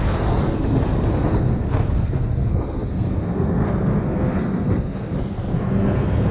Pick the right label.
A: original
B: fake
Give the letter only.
B